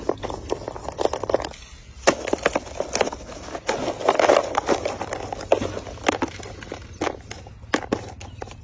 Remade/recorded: recorded